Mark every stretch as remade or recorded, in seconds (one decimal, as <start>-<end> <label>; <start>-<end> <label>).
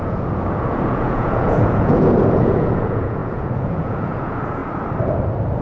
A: 0.0-4.6 remade; 4.6-5.6 recorded